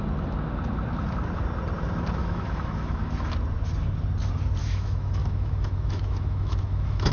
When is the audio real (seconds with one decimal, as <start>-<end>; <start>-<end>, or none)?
0.0-2.2; 3.1-4.6